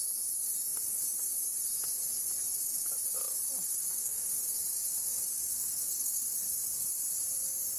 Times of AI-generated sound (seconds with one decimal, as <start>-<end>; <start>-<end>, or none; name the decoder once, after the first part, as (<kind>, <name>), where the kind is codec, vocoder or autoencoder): 3.8-4.3 (codec, SNAC); 5.5-6.3